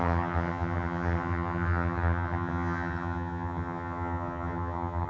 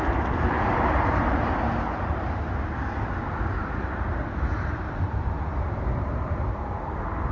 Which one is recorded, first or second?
second